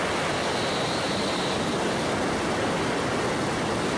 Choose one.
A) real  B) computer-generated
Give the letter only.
A